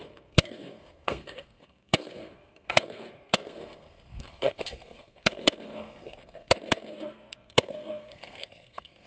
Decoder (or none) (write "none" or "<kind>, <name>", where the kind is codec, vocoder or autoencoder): codec, SNAC